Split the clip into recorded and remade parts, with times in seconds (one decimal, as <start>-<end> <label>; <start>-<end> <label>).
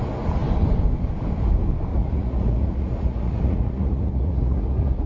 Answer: 0.0-1.9 recorded; 1.9-5.1 remade